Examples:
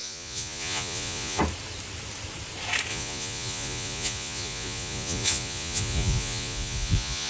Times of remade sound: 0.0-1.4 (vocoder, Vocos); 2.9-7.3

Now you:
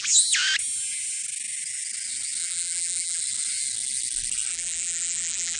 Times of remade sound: 2.4-3.2 (vocoder, BigVGAN v2); 4.5-5.6

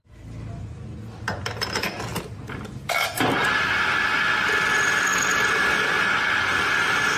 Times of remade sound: 2.1-3.7 (vocoder, BigVGAN v2); 5.1-5.8

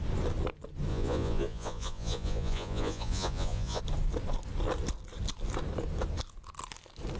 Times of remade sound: 0.9-3.8 (vocoder, Vocos)

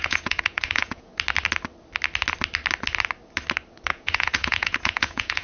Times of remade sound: 0.0-1.1 (vocoder, Vocos); 3.9-5.4